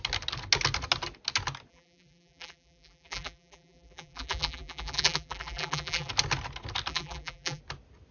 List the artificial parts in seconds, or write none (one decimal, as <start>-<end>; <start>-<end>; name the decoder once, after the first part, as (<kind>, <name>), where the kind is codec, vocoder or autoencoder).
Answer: 1.7-6.1 (vocoder, BigVGAN v2); 6.9-7.6